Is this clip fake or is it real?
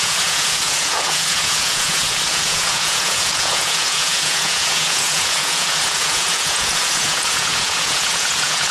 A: fake